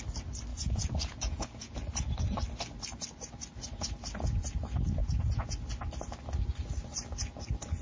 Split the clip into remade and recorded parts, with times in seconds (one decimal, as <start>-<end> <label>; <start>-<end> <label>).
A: 0.0-0.5 recorded; 0.5-1.7 remade; 1.7-5.0 recorded; 5.0-5.5 remade; 5.5-7.8 recorded

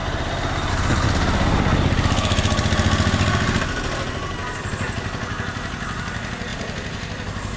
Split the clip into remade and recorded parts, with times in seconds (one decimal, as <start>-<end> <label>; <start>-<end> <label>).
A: 0.0-7.6 recorded